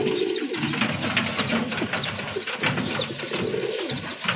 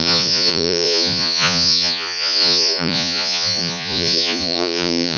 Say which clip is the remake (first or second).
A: second